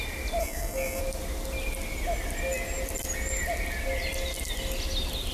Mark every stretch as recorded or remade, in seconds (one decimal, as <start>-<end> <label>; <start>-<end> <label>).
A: 0.0-0.4 recorded; 0.4-1.0 remade; 1.0-5.3 recorded